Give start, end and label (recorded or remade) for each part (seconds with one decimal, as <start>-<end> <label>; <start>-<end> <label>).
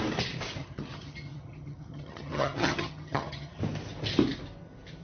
0.0-0.6 recorded; 0.6-3.6 remade; 3.6-5.0 recorded